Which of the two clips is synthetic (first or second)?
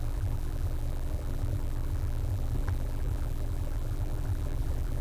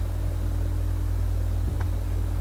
first